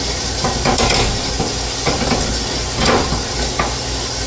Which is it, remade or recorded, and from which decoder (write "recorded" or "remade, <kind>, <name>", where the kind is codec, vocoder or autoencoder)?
recorded